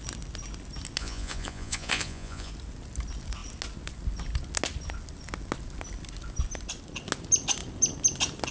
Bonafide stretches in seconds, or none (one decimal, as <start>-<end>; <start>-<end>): 0.0-1.0; 2.5-8.5